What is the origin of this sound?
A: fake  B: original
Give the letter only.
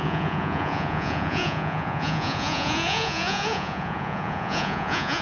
A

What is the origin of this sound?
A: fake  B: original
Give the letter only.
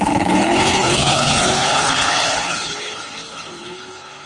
A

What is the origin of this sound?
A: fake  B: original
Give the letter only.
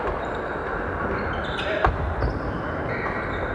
B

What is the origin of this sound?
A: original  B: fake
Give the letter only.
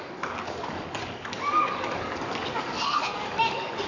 B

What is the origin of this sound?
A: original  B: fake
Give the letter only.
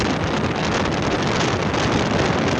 A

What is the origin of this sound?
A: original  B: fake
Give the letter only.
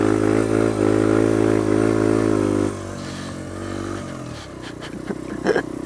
A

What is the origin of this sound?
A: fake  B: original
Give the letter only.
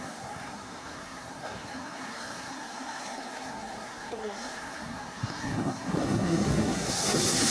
A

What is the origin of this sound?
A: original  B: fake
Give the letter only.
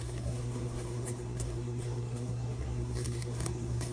B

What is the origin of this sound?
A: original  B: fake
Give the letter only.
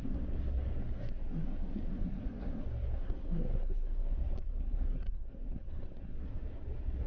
B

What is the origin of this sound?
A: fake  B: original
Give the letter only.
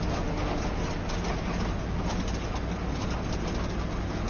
B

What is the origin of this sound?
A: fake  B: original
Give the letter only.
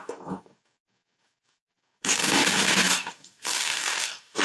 A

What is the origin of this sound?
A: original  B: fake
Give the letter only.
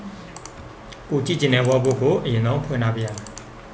A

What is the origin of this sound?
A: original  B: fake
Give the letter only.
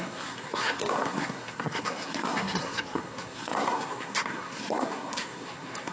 B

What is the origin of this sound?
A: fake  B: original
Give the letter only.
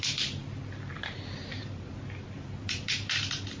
B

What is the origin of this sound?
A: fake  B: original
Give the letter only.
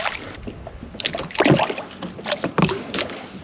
B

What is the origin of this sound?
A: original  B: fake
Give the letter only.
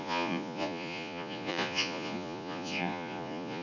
B